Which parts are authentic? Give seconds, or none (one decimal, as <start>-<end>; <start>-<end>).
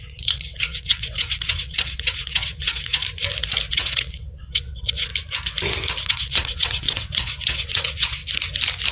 3.0-3.7; 5.1-6.1; 8.2-8.9